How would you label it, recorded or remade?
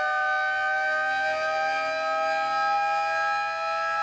recorded